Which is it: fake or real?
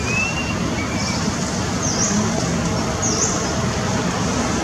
real